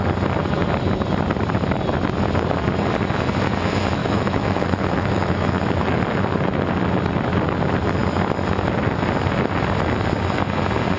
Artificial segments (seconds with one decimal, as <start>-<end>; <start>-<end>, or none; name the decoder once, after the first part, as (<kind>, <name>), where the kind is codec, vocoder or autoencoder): 4.0-6.0 (autoencoder, DAC-VAE)